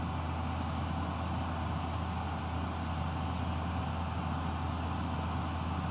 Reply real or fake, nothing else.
real